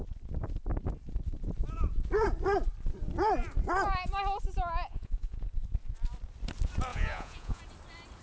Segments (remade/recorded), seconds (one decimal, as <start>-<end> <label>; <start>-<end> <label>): 0.0-4.9 recorded; 4.9-5.5 remade; 5.5-6.9 recorded; 6.9-7.6 remade; 7.6-8.2 recorded